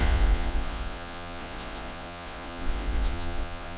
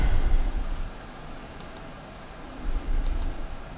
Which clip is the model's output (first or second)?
first